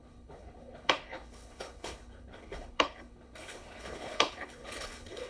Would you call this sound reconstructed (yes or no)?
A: yes